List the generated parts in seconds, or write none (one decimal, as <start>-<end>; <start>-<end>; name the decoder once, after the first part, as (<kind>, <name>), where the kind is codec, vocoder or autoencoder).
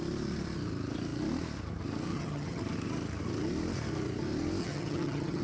2.1-2.6 (vocoder, HiFi-GAN); 4.6-5.4